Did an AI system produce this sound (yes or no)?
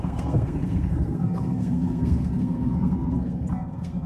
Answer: yes